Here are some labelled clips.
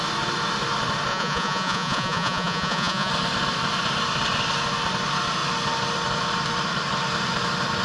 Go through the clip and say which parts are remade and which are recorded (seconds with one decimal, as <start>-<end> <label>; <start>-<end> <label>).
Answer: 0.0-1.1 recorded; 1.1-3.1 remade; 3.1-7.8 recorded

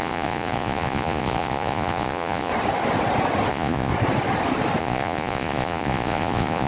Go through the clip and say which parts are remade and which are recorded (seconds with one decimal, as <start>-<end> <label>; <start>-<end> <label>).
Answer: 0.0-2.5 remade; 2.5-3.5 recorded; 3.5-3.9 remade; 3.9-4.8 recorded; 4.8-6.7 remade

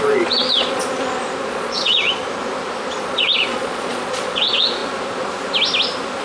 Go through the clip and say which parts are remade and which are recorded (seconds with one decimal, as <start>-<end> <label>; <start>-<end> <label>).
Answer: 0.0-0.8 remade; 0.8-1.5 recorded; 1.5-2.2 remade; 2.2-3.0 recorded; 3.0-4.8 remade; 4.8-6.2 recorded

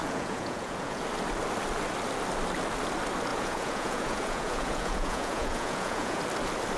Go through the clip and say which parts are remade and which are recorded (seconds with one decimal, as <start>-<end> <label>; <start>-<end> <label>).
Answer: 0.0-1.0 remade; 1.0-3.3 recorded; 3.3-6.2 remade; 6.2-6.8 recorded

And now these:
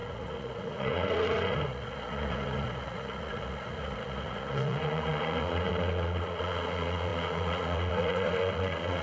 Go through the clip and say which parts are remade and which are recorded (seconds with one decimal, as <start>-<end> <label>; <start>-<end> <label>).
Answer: 0.0-9.0 remade